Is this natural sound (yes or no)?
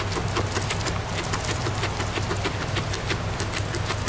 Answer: yes